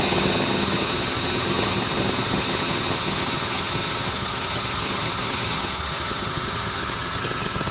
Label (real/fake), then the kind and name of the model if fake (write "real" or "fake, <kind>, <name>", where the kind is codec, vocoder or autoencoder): fake, vocoder, HiFi-GAN